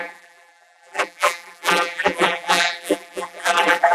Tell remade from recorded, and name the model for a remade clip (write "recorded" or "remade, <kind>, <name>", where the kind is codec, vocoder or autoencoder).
remade, vocoder, BigVGAN v2